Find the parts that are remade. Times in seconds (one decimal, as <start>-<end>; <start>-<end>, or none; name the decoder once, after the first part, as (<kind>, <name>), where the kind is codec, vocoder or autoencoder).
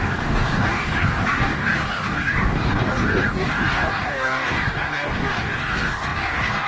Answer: 0.0-6.7 (codec, DAC)